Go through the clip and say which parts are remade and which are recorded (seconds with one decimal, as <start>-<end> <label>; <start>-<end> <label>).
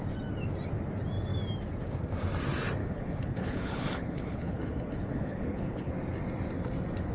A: 0.0-2.8 recorded; 2.8-5.9 remade; 5.9-7.1 recorded